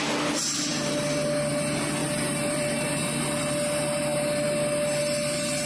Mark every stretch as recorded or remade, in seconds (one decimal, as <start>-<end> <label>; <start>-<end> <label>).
0.0-2.0 recorded; 2.0-3.0 remade; 3.0-5.7 recorded